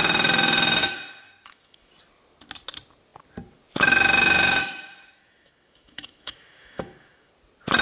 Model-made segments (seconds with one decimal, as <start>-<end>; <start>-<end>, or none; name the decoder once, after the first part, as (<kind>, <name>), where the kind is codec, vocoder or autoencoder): 0.8-1.9 (autoencoder, DAC-VAE); 4.6-7.3